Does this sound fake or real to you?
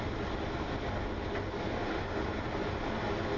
real